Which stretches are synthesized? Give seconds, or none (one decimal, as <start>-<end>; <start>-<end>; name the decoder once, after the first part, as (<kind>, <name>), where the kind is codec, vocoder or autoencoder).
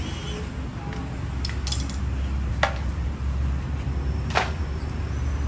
none